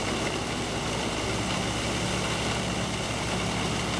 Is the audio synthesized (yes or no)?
yes